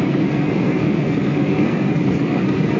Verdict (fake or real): fake